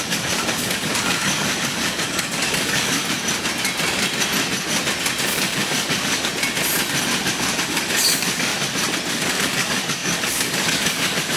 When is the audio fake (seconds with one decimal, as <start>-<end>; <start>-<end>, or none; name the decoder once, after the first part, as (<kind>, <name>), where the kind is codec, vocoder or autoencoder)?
0.0-3.0 (codec, DAC); 5.3-6.3; 7.3-8.5; 9.1-11.4